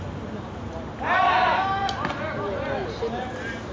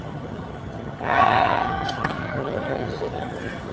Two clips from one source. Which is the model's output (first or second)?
second